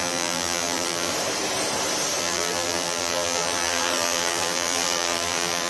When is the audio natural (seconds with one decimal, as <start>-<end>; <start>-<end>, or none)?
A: 1.1-2.2